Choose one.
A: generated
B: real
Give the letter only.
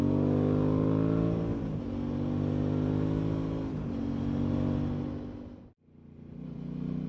B